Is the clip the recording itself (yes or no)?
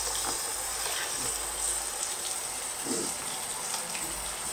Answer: yes